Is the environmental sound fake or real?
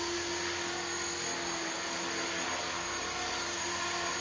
real